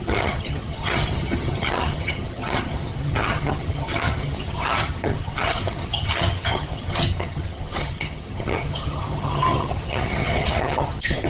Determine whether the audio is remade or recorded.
remade